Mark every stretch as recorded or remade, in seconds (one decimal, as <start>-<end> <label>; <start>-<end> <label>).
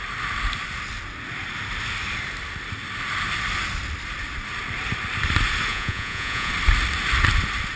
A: 0.0-5.7 recorded; 5.7-6.5 remade; 6.5-7.8 recorded